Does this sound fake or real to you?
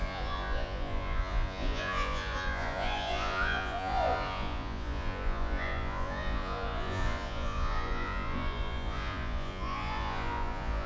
fake